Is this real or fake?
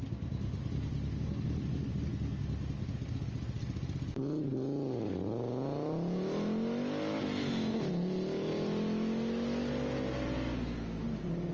real